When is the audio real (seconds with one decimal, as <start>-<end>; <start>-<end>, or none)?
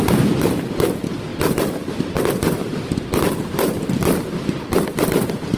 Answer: 0.0-5.6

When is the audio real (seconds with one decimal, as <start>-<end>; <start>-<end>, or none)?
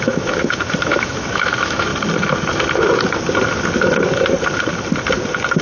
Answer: 1.9-5.6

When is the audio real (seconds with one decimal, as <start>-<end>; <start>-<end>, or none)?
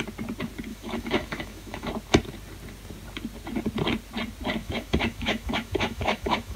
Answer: 0.0-0.7; 1.9-4.6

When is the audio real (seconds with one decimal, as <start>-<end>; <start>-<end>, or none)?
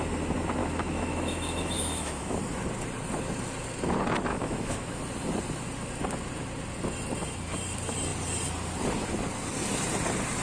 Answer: 0.0-0.6; 2.4-4.3; 5.0-10.4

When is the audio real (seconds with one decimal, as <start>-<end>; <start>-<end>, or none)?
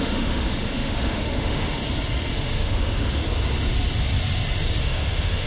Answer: 1.8-2.3; 3.2-4.8